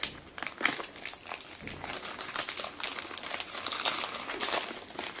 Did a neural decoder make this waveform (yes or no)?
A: no